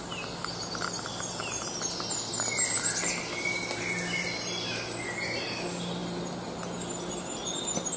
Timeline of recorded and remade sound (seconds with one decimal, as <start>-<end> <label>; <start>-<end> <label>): 0.0-8.0 recorded